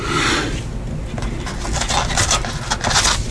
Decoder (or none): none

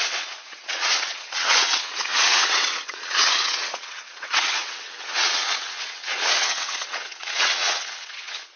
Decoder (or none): vocoder, WaveNeXt